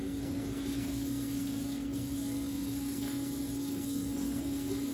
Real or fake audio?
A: fake